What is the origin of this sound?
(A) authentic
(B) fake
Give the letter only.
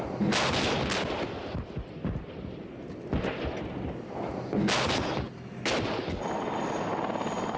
A